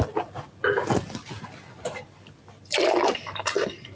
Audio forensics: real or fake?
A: fake